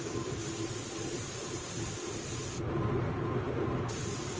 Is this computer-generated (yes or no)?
no